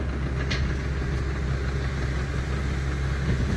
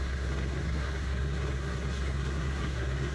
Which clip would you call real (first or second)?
first